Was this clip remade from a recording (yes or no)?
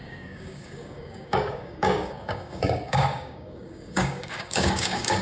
yes